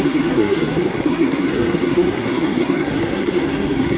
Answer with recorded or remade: remade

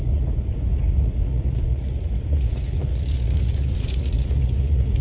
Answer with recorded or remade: remade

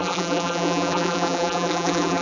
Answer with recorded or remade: remade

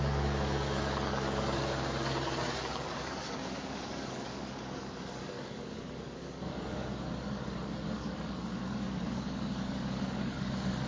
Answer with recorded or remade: remade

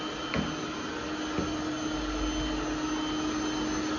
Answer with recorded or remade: recorded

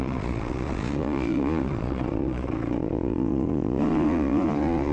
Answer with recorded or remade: remade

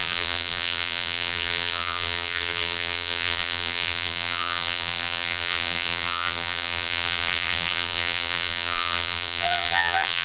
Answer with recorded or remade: remade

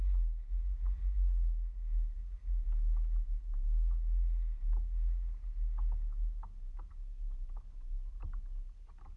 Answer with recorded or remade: recorded